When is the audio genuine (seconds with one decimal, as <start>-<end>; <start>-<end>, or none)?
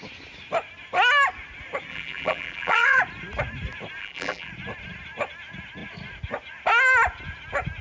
0.0-1.9; 3.0-4.0; 4.5-7.8